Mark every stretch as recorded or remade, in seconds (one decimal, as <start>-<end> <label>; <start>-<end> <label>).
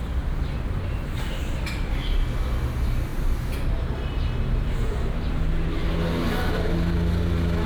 0.0-1.0 recorded; 1.0-1.9 remade; 1.9-3.1 recorded; 3.1-5.3 remade; 5.3-7.7 recorded